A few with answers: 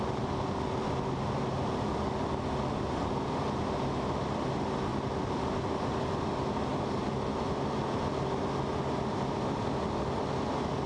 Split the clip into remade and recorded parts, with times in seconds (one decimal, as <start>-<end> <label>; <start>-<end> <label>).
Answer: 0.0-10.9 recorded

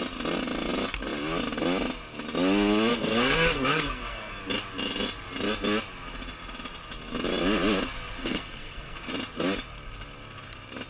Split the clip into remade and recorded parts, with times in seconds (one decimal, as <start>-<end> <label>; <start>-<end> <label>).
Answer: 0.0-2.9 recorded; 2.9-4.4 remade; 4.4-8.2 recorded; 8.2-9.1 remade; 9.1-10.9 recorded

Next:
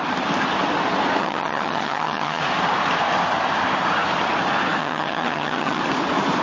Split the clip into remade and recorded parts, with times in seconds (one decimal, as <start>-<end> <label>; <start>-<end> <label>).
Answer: 0.0-1.2 recorded; 1.2-2.4 remade; 2.4-4.8 recorded; 4.8-5.8 remade; 5.8-6.4 recorded